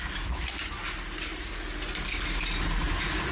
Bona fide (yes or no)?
yes